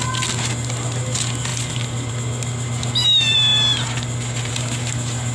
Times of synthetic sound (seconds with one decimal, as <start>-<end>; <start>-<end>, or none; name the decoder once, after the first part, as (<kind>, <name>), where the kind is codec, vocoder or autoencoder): none